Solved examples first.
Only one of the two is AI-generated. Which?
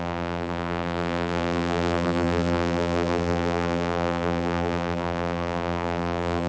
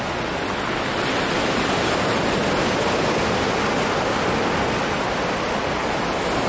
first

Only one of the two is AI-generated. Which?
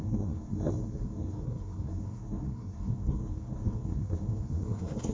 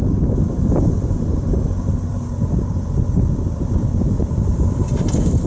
first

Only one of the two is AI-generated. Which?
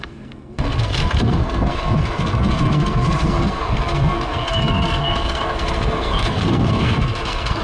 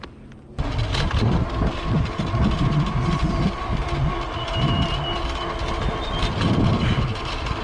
first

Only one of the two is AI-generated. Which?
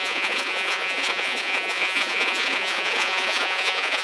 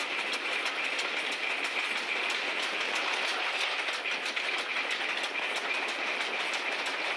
first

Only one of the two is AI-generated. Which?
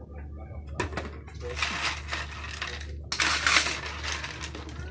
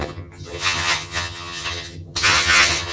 second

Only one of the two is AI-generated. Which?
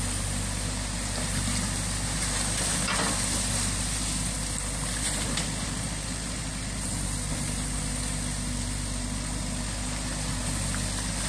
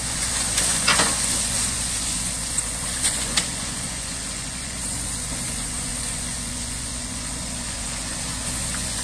second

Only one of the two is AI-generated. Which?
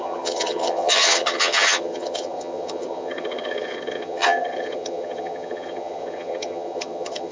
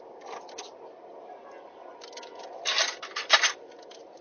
first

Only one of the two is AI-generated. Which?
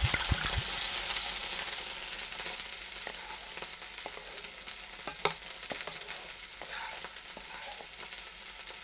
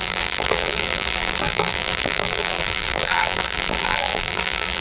second